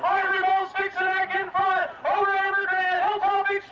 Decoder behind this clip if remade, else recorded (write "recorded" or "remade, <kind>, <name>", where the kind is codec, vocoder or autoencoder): recorded